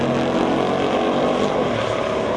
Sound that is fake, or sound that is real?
real